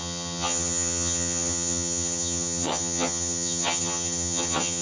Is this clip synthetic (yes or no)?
yes